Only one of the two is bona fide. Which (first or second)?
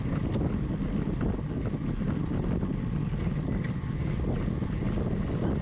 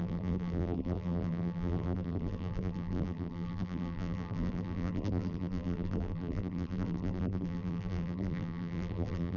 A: first